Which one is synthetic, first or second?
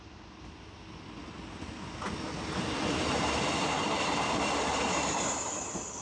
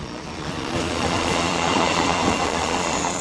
second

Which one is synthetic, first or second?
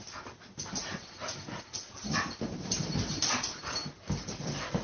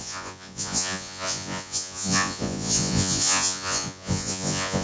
second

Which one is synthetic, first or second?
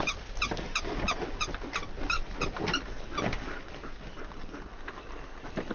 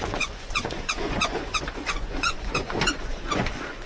second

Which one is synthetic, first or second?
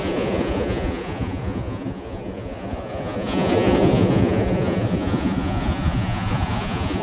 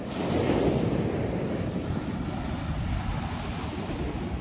first